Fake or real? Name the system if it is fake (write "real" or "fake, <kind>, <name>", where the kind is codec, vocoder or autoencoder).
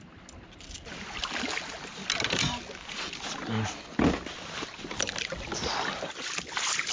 real